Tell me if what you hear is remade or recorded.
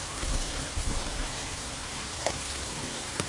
remade